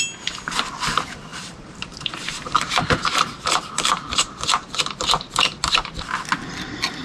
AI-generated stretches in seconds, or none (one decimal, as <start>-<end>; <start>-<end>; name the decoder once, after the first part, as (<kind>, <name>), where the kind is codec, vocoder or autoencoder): 1.3-4.8 (vocoder, BigVGAN v2)